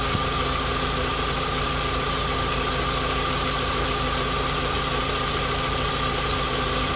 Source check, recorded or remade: recorded